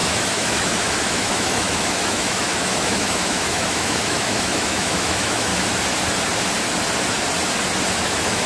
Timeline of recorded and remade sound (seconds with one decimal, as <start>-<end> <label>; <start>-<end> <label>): 0.0-5.5 remade; 5.5-8.0 recorded; 8.0-8.5 remade